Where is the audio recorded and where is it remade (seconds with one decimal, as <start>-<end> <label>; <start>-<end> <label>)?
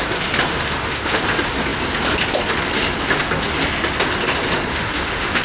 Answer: 0.0-0.5 recorded; 0.5-1.2 remade; 1.2-4.7 recorded; 4.7-5.4 remade